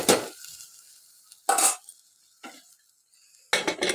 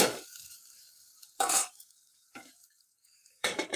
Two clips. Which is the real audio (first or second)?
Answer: first